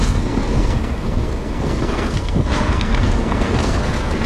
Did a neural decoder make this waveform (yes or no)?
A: yes